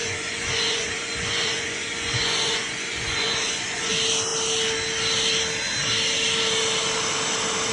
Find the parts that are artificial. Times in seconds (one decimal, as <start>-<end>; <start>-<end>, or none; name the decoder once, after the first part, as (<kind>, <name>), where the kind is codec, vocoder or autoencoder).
0.0-3.9 (vocoder, Vocos)